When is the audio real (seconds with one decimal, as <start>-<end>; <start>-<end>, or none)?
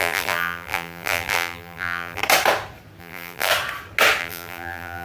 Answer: 2.2-3.0; 3.5-4.2